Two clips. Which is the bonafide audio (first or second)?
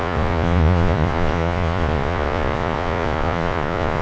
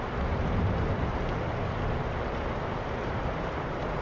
second